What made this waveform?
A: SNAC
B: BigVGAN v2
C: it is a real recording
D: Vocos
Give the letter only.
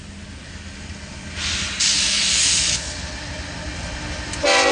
C